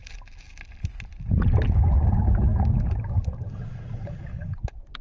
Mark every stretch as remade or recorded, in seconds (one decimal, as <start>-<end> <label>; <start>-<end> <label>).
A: 0.0-2.5 recorded; 2.5-3.1 remade; 3.1-5.0 recorded